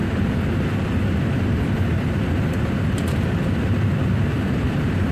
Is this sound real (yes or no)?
yes